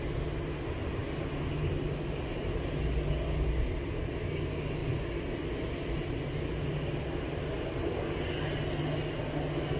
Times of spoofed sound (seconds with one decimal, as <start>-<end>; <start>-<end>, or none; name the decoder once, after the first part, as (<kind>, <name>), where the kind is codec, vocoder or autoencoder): none